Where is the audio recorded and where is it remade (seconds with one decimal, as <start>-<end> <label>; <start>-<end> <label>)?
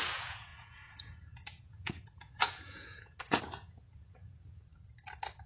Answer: 0.0-4.7 remade; 4.7-5.5 recorded